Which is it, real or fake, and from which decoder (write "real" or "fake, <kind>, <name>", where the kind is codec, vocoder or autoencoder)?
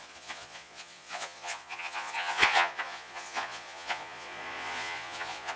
fake, vocoder, Vocos